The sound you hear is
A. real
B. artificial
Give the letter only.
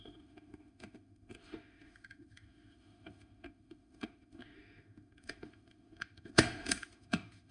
B